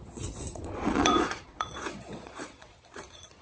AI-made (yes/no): yes